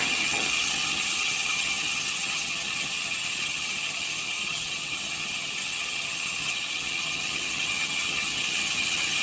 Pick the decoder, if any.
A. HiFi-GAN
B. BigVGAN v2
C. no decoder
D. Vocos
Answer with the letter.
A